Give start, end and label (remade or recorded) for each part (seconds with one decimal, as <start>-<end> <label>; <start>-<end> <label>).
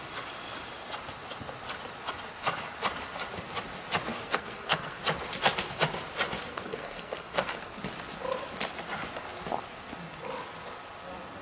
0.0-4.1 recorded; 4.1-5.0 remade; 5.0-6.5 recorded; 6.5-7.8 remade; 7.8-11.4 recorded